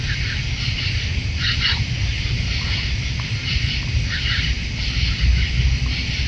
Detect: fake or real real